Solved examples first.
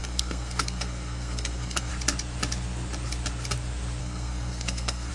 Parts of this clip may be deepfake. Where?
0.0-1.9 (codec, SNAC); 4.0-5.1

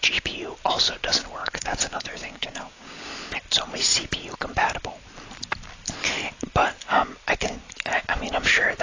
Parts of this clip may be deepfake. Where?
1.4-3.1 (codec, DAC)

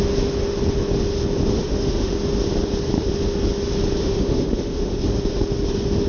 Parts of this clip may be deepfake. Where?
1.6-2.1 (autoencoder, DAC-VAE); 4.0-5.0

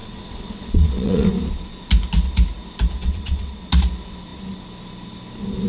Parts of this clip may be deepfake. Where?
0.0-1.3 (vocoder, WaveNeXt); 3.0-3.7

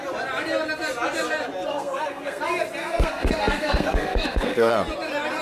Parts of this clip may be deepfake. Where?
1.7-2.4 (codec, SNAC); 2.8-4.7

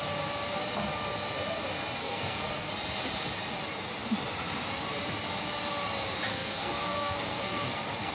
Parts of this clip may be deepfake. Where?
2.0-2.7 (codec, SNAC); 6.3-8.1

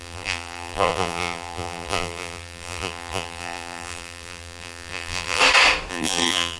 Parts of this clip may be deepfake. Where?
0.0-5.4 (vocoder, BigVGAN v2); 5.9-6.6

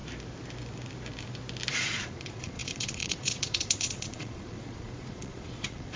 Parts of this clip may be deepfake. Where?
1.7-6.0 (vocoder, Vocos)